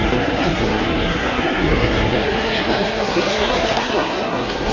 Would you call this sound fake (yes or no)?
yes